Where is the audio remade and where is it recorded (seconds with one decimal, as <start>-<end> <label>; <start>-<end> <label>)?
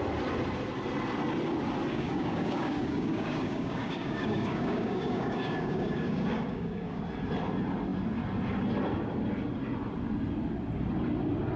0.0-1.9 recorded; 1.9-7.0 remade; 7.0-11.6 recorded